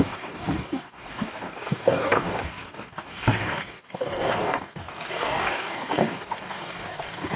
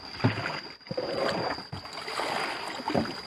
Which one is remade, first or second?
first